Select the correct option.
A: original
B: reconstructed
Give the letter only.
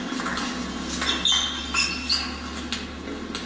A